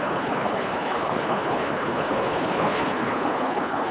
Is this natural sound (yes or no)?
no